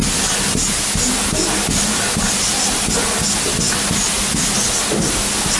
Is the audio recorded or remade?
recorded